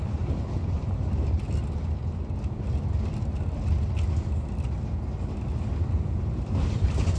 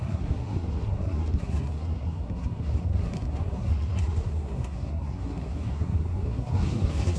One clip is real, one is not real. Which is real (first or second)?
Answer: first